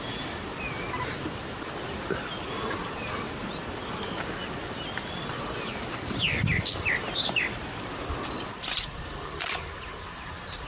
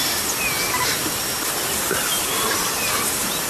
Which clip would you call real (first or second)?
second